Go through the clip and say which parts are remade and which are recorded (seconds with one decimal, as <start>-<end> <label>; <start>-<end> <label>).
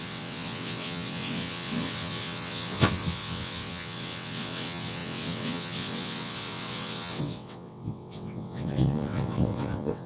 0.0-10.1 remade